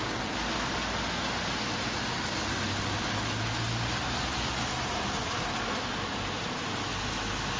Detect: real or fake real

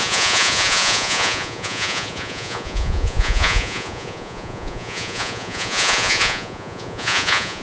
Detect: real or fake fake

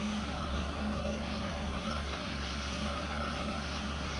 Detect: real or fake fake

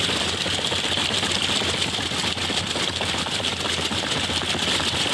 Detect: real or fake real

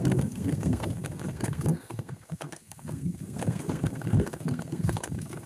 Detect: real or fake fake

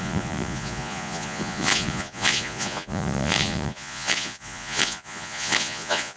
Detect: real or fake fake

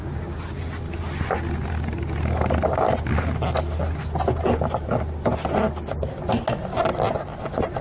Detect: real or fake real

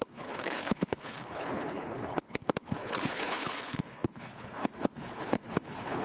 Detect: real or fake fake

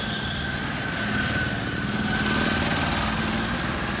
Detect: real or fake real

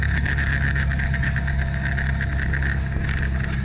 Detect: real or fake fake